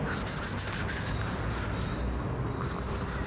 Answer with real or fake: real